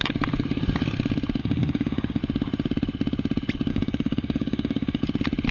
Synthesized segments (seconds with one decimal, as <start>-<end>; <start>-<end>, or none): 1.4-2.2; 3.7-5.0